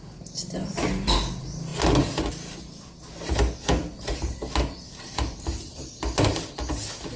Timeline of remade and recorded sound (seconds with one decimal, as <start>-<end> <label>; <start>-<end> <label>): 0.0-7.2 recorded